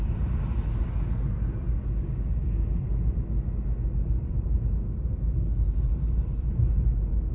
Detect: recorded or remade recorded